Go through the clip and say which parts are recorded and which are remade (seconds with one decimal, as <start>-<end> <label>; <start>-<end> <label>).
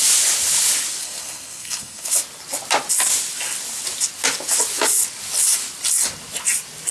0.0-1.0 recorded; 1.0-2.2 remade; 2.2-6.9 recorded